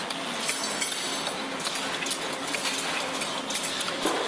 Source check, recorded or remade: recorded